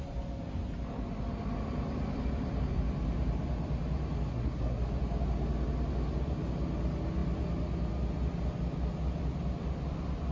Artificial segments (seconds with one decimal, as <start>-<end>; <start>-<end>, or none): 4.3-4.8